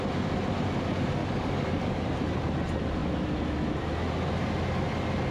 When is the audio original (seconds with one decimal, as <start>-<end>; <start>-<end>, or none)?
0.0-1.2; 2.0-5.3